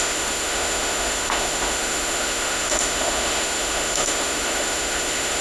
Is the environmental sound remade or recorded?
remade